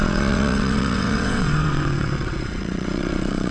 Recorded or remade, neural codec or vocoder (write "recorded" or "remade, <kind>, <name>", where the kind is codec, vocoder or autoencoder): remade, vocoder, WaveNeXt